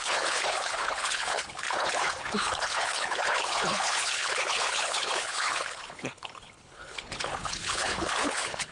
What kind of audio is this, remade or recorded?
remade